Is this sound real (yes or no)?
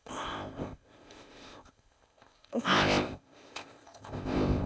no